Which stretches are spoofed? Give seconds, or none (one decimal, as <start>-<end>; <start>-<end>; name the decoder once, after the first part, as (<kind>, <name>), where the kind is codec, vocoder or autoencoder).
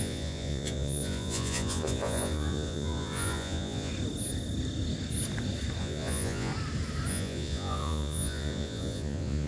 0.0-3.9 (vocoder, Vocos); 5.8-6.5; 7.1-9.5